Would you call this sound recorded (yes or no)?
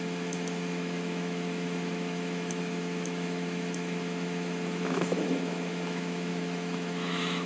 no